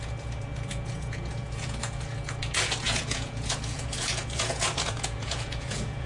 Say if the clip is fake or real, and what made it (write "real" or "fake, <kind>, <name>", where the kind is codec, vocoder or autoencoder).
fake, vocoder, Vocos